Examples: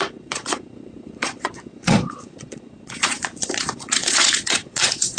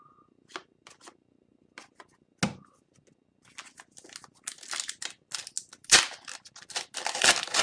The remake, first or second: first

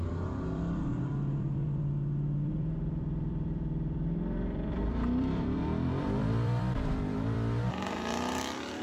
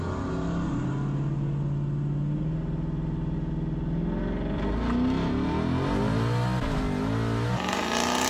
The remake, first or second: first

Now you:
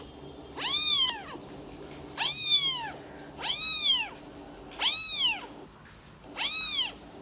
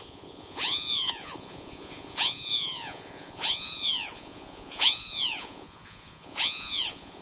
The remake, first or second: second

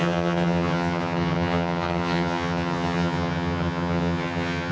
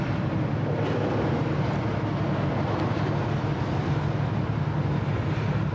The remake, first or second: first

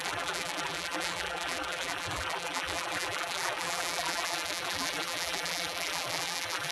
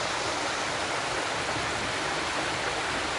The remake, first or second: first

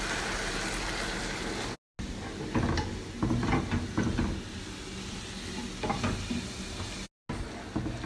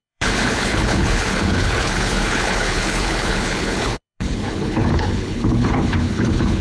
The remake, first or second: second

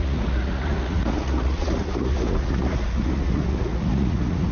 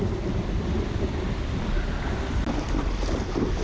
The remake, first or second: first